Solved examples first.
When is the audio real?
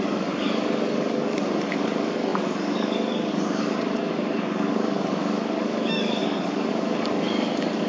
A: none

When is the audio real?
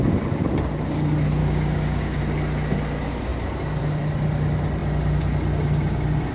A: 0.0-1.4; 2.2-6.3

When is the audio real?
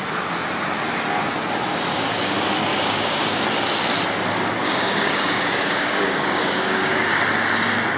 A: 0.0-2.7; 3.4-4.6; 7.1-8.0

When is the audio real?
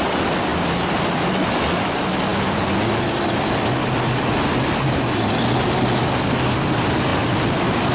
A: 0.0-7.9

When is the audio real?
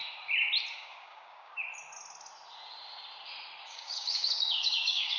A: 0.0-0.7; 1.7-3.6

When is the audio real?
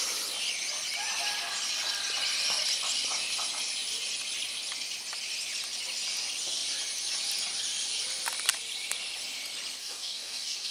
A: 0.0-9.8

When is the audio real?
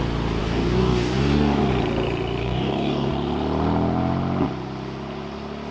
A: 0.0-0.4; 1.6-2.4; 3.1-5.7